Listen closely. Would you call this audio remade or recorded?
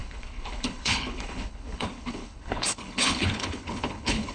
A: remade